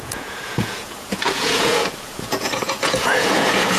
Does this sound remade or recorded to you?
remade